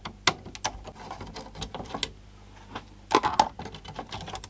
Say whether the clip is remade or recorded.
recorded